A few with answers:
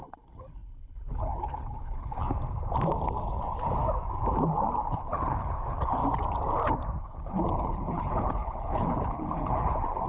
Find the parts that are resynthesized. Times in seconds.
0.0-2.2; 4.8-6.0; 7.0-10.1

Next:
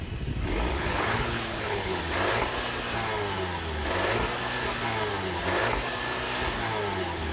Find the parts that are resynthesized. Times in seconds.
0.7-2.0